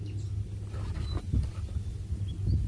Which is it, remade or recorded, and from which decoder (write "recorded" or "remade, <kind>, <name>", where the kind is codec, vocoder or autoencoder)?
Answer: recorded